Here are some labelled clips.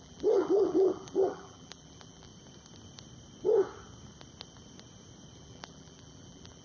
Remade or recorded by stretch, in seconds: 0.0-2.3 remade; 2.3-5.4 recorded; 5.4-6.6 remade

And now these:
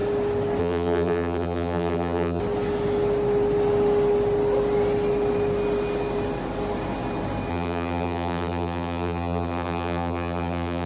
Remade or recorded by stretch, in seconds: 0.0-0.6 recorded; 0.6-2.4 remade; 2.4-7.5 recorded; 7.5-10.9 remade

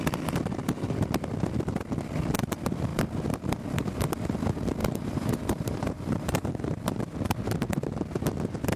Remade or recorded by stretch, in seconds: 0.0-4.8 recorded; 4.8-6.6 remade; 6.6-8.8 recorded

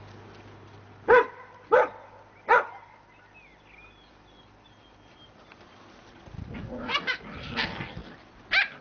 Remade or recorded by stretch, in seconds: 0.0-8.8 recorded

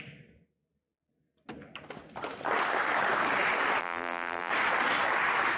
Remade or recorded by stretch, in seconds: 0.0-3.8 recorded; 3.8-4.5 remade; 4.5-5.6 recorded

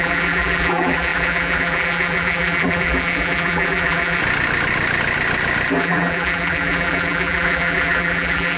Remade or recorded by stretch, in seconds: 0.0-4.2 remade; 4.2-5.7 recorded; 5.7-8.6 remade

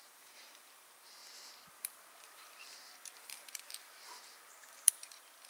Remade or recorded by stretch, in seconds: 0.0-1.2 remade; 1.2-1.7 recorded; 1.7-5.5 remade